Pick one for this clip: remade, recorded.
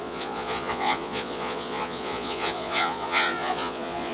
remade